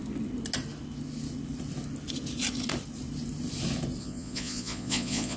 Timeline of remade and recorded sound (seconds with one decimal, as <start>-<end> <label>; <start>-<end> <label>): 0.0-4.0 recorded; 4.0-5.4 remade